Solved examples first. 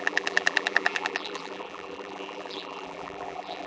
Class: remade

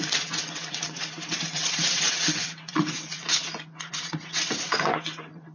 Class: remade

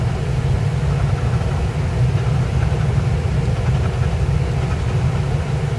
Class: recorded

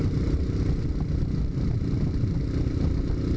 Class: recorded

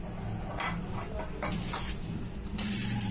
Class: recorded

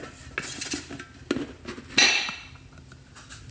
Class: recorded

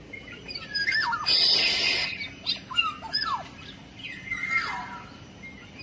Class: recorded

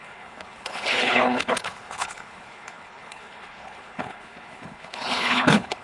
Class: remade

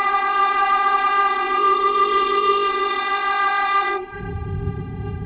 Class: remade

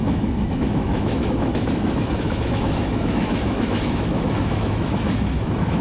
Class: remade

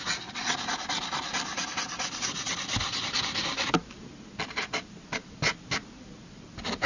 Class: recorded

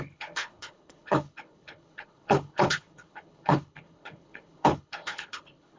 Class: remade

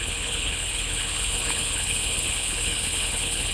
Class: remade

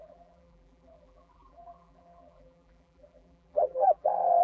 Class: remade